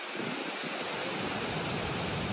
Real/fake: real